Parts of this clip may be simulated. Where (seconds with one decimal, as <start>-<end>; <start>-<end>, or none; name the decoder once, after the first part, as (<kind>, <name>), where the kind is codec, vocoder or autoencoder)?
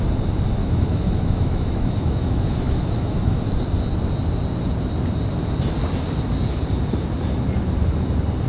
0.6-3.4 (autoencoder, DAC-VAE)